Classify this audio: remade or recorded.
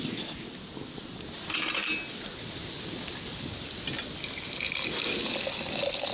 recorded